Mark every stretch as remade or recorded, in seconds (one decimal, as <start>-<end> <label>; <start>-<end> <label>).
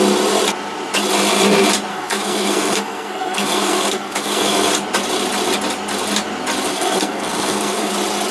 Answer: 0.0-1.9 recorded; 1.9-4.7 remade; 4.7-6.7 recorded; 6.7-7.9 remade; 7.9-8.3 recorded